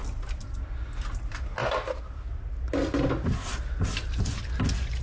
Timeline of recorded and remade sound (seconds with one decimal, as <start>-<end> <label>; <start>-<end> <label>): 0.0-5.0 recorded